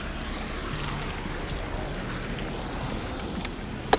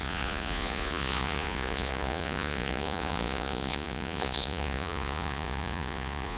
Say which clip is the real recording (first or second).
first